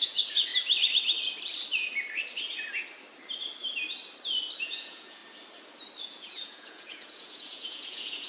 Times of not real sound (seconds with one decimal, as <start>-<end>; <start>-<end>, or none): 0.0-0.5; 4.6-5.2; 6.0-8.3